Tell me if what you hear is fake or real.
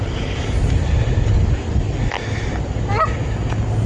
real